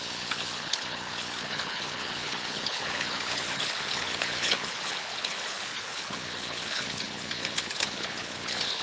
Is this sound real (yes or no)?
no